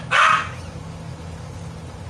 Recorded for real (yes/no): yes